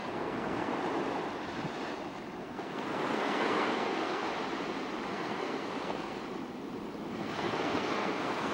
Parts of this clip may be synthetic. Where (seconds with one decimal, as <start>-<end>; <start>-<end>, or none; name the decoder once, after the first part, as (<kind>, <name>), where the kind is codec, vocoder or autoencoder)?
0.0-0.7 (codec, SNAC); 2.4-4.3; 5.1-6.2; 7.1-8.5